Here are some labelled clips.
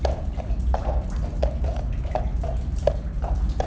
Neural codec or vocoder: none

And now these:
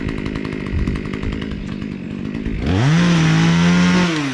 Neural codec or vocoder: none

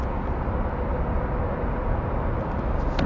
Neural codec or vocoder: none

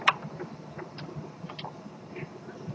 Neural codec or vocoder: none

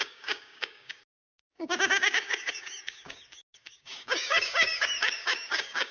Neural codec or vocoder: codec, DAC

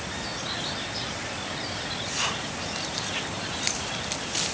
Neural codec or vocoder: none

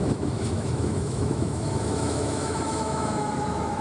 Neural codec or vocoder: autoencoder, DAC-VAE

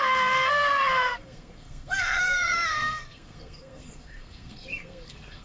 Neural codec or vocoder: codec, SNAC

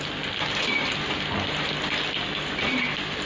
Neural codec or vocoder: none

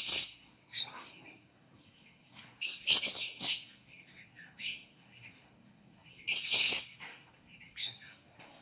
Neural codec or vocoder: codec, SNAC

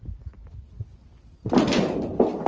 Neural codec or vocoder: none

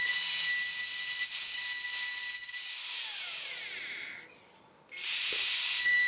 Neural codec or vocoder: none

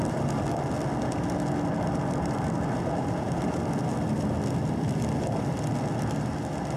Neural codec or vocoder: none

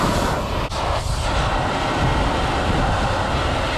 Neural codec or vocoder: none